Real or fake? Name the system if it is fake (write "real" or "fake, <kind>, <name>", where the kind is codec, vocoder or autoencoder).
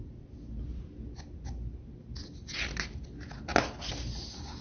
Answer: real